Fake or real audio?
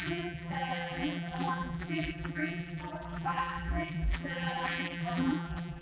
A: fake